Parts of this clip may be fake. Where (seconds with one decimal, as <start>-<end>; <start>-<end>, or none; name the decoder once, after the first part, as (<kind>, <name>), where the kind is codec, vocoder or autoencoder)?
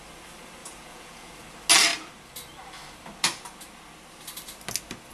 0.6-1.3 (vocoder, Vocos)